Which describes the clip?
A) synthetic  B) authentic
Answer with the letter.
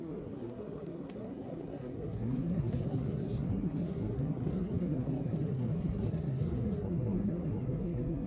A